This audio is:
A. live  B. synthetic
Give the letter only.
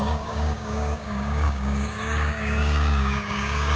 B